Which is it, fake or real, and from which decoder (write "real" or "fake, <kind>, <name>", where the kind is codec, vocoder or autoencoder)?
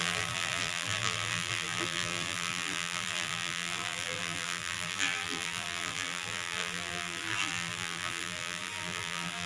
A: fake, vocoder, BigVGAN v2